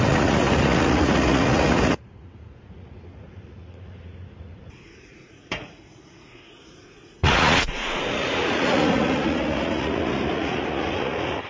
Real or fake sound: fake